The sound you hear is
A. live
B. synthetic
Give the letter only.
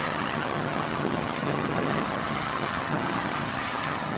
B